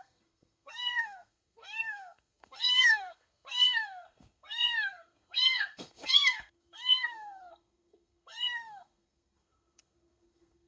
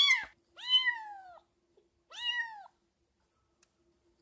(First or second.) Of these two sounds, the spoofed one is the first